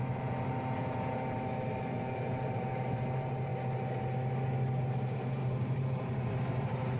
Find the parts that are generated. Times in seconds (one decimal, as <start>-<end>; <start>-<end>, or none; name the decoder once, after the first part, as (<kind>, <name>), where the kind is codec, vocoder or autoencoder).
2.3-3.5 (vocoder, BigVGAN v2); 4.8-7.0

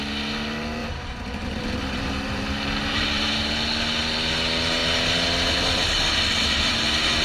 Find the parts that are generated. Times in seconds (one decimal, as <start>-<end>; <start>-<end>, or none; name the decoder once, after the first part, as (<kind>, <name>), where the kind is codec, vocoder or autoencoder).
0.8-3.5 (vocoder, BigVGAN v2)

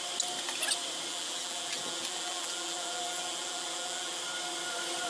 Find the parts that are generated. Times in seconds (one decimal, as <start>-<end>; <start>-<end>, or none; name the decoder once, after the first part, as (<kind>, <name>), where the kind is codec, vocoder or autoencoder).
1.1-4.2 (vocoder, BigVGAN v2)

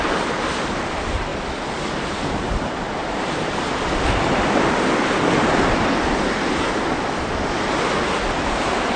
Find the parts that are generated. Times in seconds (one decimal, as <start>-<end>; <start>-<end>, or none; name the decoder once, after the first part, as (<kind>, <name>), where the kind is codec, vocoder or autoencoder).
0.0-1.3 (vocoder, BigVGAN v2); 1.9-3.0; 8.0-9.0

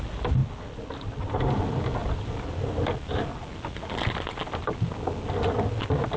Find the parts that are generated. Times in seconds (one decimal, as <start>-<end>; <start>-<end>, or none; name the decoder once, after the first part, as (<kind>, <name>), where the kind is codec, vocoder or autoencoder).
0.4-1.4 (vocoder, BigVGAN v2); 2.0-2.8